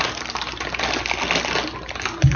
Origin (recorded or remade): recorded